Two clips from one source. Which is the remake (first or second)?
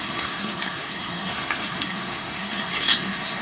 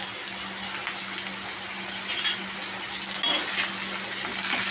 first